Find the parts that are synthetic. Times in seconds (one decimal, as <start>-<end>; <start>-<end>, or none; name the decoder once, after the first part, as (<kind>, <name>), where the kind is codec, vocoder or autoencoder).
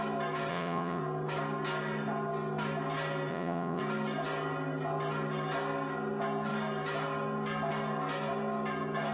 0.5-1.0 (vocoder, Vocos); 3.3-3.8